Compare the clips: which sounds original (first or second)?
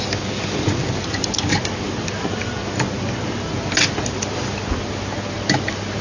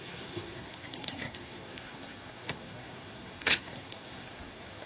first